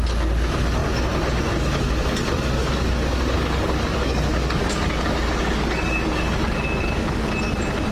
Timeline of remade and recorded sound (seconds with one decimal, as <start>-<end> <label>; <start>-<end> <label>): 0.0-2.6 recorded; 2.6-7.3 remade; 7.3-7.9 recorded